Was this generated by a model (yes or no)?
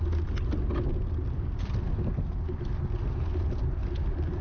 no